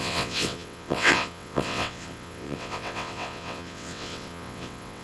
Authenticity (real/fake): fake